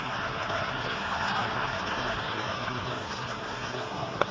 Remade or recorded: remade